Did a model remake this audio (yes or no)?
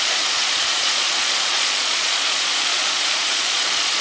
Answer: yes